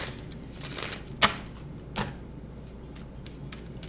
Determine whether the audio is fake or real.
real